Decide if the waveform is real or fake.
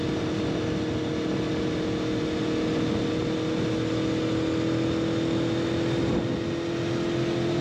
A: real